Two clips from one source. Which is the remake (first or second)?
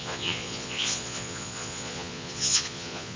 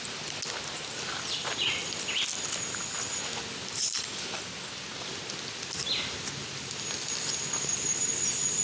first